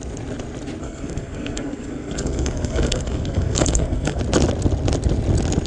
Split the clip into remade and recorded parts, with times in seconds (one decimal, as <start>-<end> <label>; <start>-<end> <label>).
0.0-0.8 recorded; 0.8-4.2 remade; 4.2-5.7 recorded

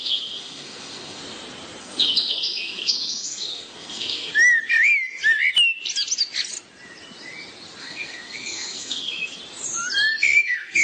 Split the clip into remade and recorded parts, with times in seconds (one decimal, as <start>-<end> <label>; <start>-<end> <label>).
0.0-1.2 remade; 1.2-1.8 recorded; 1.8-4.3 remade; 4.3-7.8 recorded; 7.8-9.4 remade; 9.4-10.2 recorded; 10.2-10.8 remade